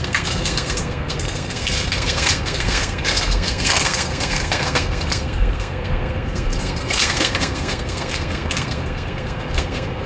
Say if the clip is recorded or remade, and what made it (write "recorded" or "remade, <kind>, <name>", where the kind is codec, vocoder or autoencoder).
remade, codec, SNAC